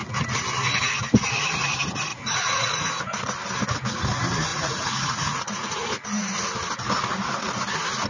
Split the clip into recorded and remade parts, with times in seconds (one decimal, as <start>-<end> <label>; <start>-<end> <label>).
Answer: 0.0-2.1 recorded; 2.1-2.9 remade; 2.9-4.5 recorded; 4.5-6.5 remade; 6.5-8.1 recorded